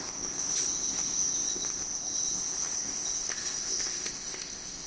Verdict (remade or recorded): remade